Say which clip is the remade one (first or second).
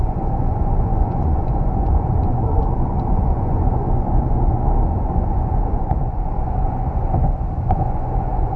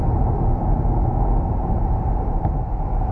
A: first